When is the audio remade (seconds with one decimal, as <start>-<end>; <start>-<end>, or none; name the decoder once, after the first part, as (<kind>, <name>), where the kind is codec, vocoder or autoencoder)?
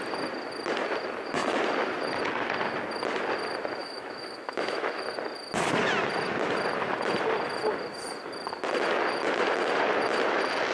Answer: 3.8-5.0 (autoencoder, DAC-VAE)